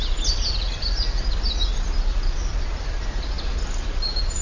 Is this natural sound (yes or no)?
yes